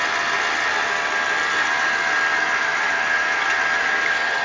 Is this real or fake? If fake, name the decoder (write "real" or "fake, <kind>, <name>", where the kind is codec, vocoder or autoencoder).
real